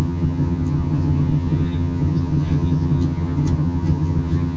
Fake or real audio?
fake